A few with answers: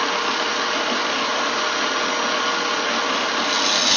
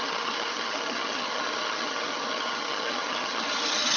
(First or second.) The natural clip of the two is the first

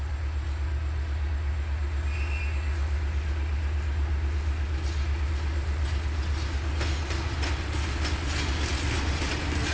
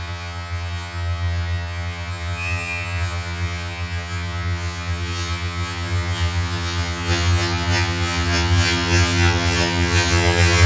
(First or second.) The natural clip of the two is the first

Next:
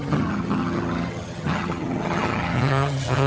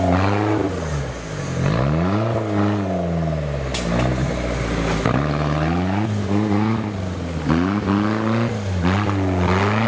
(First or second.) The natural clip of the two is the second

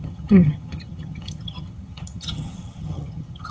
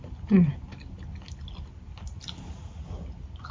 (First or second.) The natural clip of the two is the second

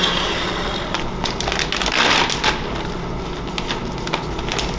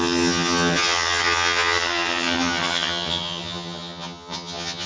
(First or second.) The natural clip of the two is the first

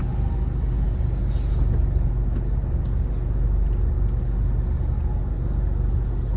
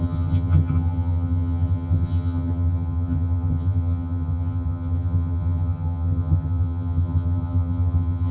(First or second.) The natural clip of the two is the first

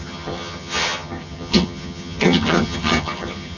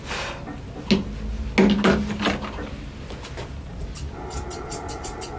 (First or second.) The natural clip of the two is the second